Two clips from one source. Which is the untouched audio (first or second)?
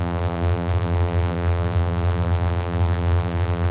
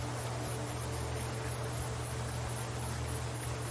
second